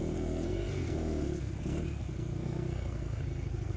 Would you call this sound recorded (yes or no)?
no